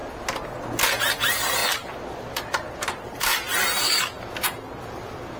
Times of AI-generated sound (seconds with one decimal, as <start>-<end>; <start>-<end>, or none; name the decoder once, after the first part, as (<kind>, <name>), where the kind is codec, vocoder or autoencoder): 1.0-1.6 (vocoder, BigVGAN v2); 2.3-3.3; 4.2-5.4